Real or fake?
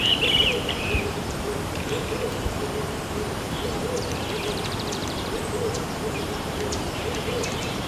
fake